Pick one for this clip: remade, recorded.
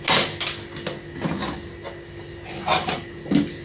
recorded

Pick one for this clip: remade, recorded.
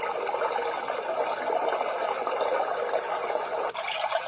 recorded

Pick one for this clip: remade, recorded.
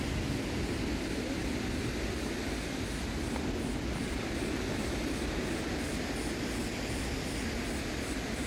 recorded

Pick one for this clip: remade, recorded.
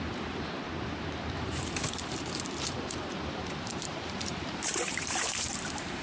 remade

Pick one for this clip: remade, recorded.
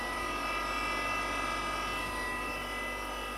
recorded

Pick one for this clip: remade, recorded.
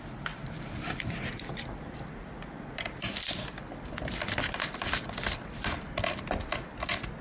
remade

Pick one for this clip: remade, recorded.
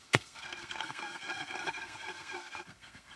remade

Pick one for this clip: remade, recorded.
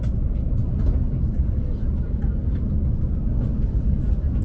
recorded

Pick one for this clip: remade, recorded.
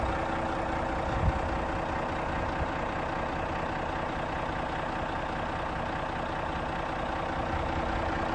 recorded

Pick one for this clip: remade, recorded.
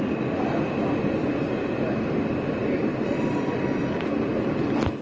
recorded